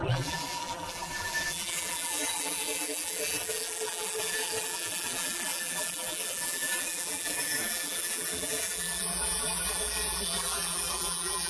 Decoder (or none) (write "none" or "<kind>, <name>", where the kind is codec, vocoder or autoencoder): vocoder, BigVGAN v2